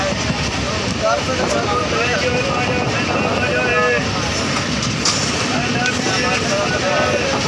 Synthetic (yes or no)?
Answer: no